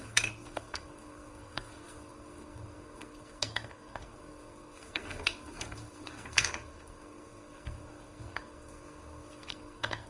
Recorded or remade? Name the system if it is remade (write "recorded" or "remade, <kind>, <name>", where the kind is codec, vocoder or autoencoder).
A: remade, codec, SNAC